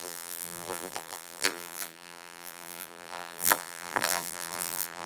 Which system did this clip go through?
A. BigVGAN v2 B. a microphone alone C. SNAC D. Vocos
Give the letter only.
A